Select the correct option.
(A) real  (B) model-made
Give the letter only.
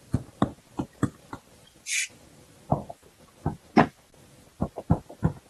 A